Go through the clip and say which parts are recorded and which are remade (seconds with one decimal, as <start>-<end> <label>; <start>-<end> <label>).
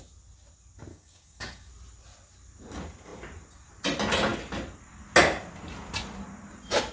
0.0-0.9 recorded; 0.9-1.7 remade; 1.7-6.9 recorded